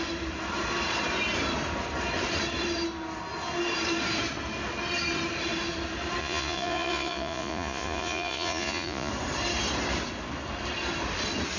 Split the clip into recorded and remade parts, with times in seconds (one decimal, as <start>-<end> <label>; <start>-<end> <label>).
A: 0.0-6.2 recorded; 6.2-9.1 remade; 9.1-11.6 recorded